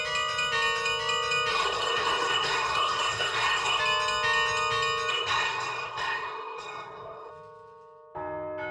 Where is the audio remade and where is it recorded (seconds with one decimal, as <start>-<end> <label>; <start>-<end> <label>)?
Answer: 0.0-1.5 recorded; 1.5-3.8 remade; 3.8-5.1 recorded; 5.1-7.3 remade; 7.3-8.7 recorded